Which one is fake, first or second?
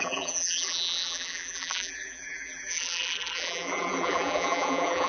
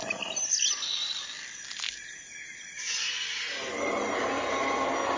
first